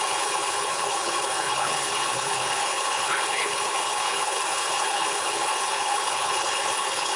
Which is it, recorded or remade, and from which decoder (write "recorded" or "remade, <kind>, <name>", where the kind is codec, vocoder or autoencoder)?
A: remade, codec, HILCodec